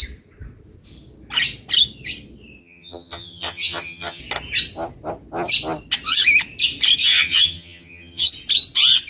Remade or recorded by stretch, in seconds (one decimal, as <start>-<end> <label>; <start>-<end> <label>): 0.0-2.6 recorded; 2.6-4.2 remade; 4.2-7.0 recorded; 7.0-8.3 remade; 8.3-9.1 recorded